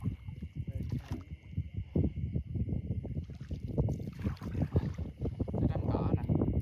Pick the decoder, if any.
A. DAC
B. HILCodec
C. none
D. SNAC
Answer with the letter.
C